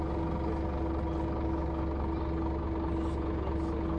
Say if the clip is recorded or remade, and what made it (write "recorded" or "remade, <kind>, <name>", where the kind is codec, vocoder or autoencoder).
recorded